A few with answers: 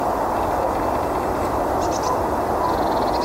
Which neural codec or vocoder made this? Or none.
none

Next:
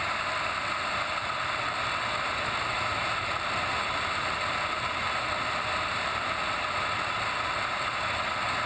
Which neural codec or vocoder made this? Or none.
none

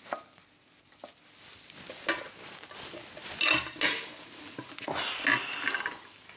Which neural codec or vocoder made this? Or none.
none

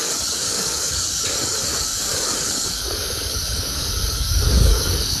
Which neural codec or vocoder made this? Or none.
codec, DAC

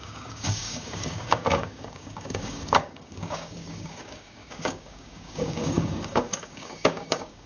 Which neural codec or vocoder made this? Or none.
codec, DAC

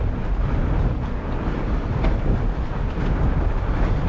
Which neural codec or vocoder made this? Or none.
none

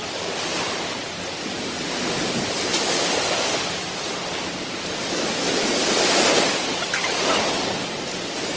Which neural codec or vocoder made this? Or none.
none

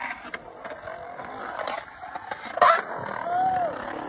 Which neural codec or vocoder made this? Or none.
none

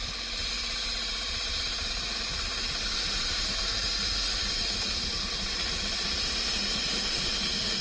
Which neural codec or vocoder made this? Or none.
none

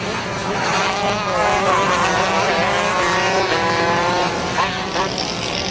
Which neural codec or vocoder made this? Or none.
none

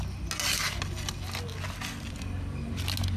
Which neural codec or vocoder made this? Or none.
none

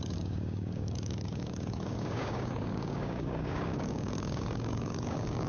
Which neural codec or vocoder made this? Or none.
codec, DAC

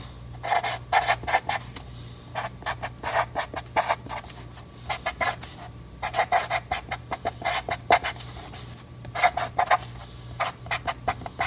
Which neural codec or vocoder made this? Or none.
none